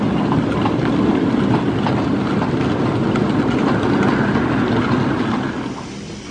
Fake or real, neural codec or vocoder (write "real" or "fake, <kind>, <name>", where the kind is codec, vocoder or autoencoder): real